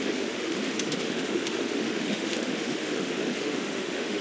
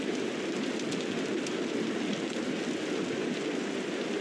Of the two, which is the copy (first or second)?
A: first